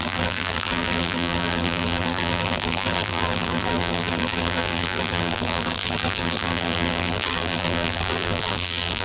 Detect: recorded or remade remade